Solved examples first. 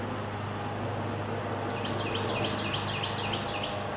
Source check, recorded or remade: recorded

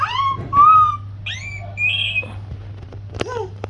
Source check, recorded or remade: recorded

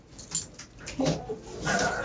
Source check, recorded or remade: recorded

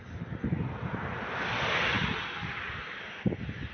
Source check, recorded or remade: recorded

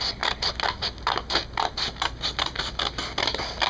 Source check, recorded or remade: recorded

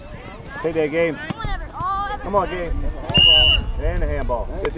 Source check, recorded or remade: recorded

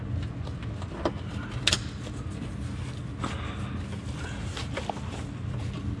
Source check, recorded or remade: recorded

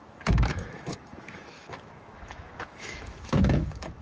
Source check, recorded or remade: remade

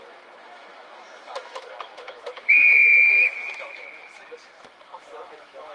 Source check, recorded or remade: remade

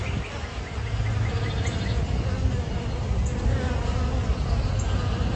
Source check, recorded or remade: recorded